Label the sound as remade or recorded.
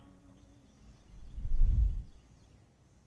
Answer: recorded